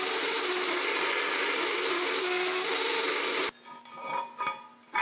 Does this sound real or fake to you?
real